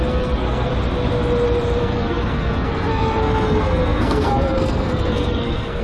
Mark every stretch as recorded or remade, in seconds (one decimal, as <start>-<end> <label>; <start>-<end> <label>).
0.0-0.7 remade; 0.7-1.8 recorded; 1.8-5.8 remade